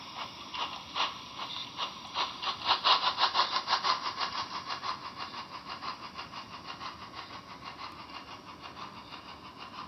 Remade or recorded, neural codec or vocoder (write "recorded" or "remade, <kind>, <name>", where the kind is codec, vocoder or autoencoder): recorded